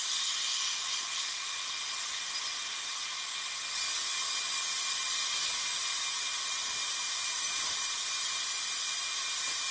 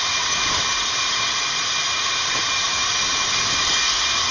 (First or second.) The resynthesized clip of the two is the second